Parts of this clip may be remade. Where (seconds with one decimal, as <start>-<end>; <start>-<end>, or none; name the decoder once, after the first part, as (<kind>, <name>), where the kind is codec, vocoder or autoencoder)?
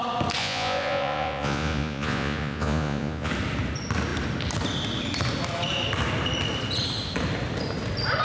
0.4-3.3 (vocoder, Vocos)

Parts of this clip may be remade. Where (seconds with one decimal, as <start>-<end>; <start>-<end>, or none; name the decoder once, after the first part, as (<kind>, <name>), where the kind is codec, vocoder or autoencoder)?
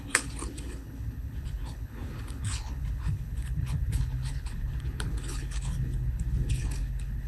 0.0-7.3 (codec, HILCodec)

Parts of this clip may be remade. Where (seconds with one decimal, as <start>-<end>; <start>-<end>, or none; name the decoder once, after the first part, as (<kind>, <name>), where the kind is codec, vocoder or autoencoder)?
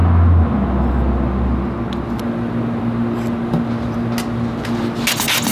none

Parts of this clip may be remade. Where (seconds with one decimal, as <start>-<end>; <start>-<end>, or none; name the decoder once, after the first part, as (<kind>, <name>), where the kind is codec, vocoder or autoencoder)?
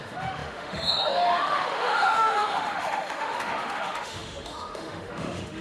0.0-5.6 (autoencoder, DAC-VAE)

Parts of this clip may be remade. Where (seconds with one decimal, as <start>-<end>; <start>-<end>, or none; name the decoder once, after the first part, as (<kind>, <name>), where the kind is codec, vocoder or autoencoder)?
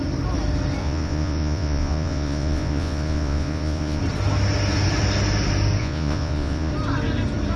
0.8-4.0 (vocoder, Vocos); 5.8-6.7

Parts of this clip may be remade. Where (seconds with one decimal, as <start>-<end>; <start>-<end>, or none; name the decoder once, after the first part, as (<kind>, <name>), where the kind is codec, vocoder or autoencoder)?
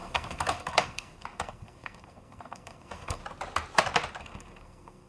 0.0-3.2 (codec, SNAC); 4.2-5.1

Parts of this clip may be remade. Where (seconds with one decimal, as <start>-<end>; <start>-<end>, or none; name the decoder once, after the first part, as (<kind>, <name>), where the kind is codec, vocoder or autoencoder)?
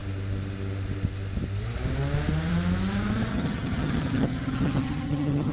3.3-5.5 (vocoder, HiFi-GAN)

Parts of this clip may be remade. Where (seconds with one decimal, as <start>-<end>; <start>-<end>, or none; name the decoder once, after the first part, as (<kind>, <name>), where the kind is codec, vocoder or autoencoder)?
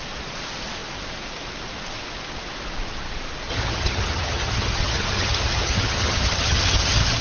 3.5-7.2 (vocoder, HiFi-GAN)